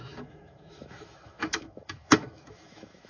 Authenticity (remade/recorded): remade